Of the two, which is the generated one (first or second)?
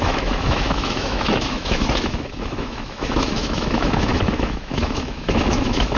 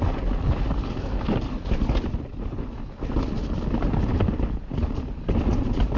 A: first